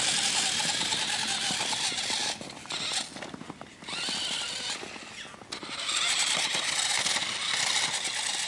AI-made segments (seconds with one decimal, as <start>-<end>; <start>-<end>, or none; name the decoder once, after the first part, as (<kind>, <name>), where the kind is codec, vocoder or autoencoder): none